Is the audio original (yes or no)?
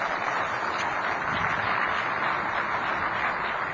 yes